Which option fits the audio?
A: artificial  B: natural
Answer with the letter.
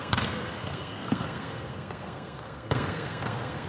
A